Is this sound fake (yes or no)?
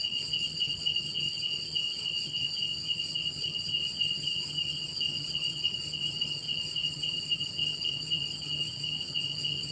yes